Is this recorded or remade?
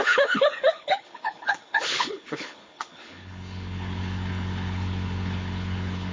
remade